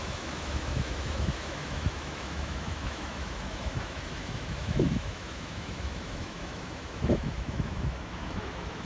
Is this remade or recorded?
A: remade